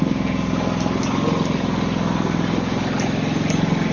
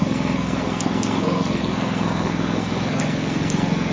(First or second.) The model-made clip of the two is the second